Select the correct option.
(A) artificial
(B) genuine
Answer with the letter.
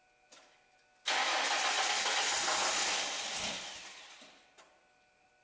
B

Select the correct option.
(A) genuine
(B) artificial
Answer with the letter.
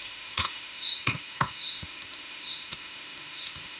B